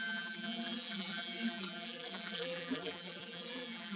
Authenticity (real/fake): fake